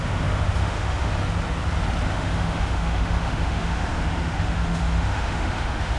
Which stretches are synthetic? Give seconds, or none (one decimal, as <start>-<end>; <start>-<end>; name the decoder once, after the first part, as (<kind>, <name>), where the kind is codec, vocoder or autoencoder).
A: 0.0-1.1 (autoencoder, DAC-VAE); 2.1-6.0